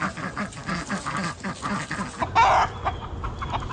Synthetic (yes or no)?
no